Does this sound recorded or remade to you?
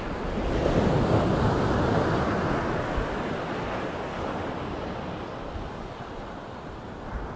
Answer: recorded